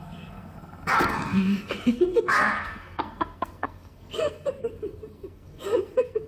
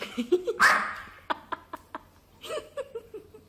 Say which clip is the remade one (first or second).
first